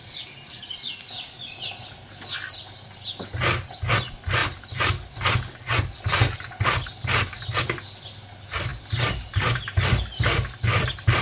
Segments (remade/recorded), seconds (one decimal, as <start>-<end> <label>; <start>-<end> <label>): 0.0-0.6 remade; 0.6-8.7 recorded; 8.7-9.5 remade; 9.5-11.2 recorded